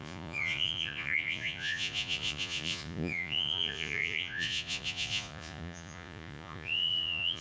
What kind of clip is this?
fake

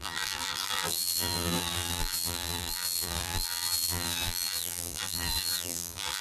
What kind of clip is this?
fake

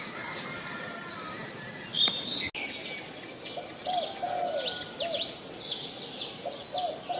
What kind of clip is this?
real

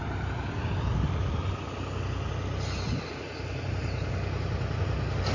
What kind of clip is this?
real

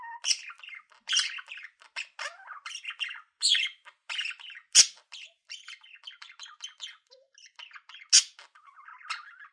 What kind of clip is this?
real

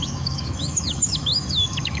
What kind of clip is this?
fake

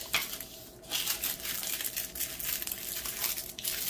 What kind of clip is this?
real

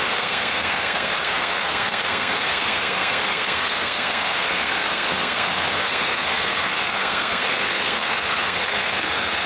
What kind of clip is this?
fake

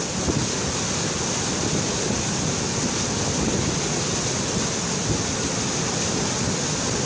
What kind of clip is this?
real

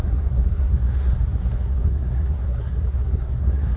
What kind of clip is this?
fake